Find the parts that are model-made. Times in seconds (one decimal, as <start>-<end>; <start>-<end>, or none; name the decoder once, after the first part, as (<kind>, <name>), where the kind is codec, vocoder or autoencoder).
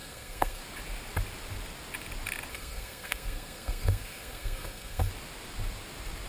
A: 0.0-0.6 (codec, SNAC); 2.5-5.1